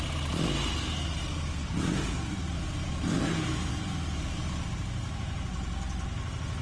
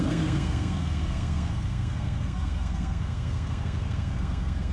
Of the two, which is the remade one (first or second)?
second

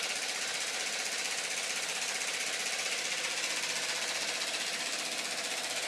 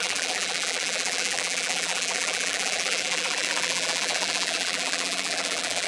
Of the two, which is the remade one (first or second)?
second